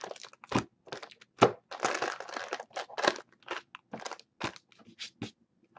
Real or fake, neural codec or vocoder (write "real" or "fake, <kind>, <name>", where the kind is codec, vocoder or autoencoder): real